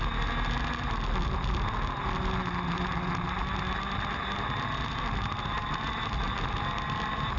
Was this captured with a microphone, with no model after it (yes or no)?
yes